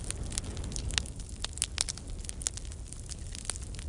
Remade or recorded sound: recorded